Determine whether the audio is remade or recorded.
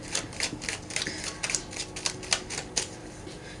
recorded